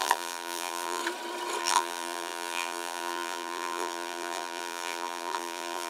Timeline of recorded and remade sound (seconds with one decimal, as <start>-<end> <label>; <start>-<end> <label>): 0.0-1.0 remade; 1.0-1.6 recorded; 1.6-5.9 remade